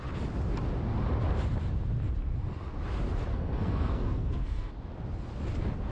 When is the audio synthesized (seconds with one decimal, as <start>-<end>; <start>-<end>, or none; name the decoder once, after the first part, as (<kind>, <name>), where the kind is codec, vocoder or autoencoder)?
3.3-4.7 (codec, SNAC)